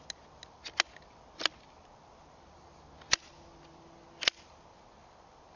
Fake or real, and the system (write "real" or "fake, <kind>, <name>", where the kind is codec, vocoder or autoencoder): real